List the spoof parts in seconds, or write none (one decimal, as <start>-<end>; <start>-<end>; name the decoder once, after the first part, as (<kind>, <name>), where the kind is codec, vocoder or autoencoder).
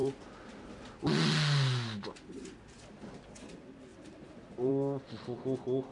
3.9-4.7 (vocoder, BigVGAN v2)